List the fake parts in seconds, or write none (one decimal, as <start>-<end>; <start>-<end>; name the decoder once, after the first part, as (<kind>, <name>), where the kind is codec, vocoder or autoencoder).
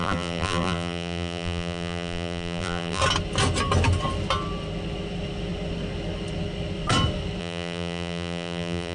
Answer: 0.0-3.0 (vocoder, BigVGAN v2); 7.4-8.9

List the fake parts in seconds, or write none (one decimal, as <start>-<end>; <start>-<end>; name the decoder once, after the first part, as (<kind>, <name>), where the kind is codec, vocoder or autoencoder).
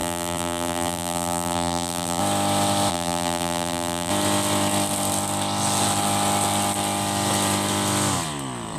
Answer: 0.0-2.2 (vocoder, BigVGAN v2); 2.9-4.1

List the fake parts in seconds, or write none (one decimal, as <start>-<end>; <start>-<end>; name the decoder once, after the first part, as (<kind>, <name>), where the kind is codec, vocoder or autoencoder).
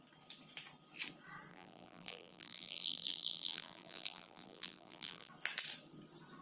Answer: 1.5-5.3 (vocoder, BigVGAN v2)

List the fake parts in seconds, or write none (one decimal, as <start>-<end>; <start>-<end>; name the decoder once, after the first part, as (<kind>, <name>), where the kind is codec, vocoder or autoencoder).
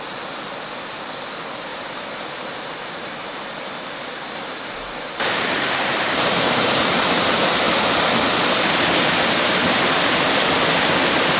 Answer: 1.7-6.9 (vocoder, BigVGAN v2); 9.6-10.6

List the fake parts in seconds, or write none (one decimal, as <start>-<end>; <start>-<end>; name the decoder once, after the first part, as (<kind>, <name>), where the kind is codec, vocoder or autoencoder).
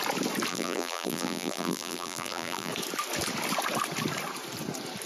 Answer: 0.5-2.7 (vocoder, BigVGAN v2)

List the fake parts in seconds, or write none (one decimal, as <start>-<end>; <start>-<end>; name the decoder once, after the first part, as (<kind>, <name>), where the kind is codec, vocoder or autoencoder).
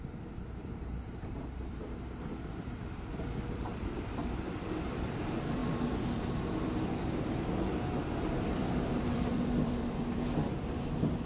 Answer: 0.0-11.2 (vocoder, BigVGAN v2)